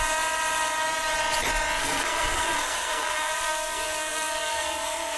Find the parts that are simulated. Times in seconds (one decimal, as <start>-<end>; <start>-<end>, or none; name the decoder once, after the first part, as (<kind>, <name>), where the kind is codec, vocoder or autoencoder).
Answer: 1.8-5.2 (codec, SNAC)